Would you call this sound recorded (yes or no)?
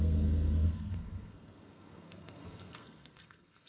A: no